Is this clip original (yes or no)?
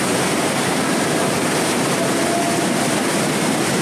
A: yes